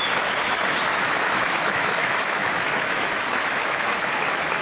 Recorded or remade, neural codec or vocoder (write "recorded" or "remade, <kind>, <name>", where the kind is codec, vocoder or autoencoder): remade, autoencoder, DAC-VAE